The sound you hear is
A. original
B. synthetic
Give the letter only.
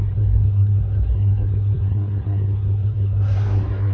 B